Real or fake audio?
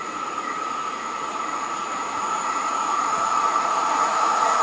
fake